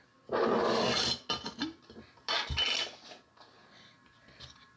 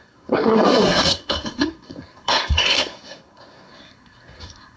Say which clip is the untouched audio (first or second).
first